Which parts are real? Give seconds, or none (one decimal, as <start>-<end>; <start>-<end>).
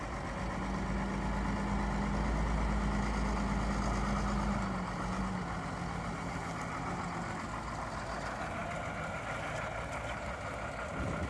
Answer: 0.0-11.3